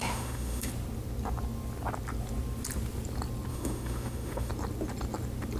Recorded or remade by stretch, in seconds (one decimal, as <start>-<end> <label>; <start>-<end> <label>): 0.0-0.7 remade; 0.7-3.5 recorded; 3.5-4.5 remade; 4.5-5.6 recorded